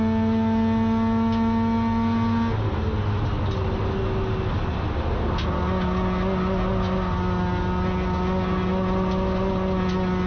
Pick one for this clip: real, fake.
real